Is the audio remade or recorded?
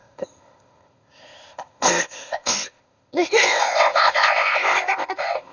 remade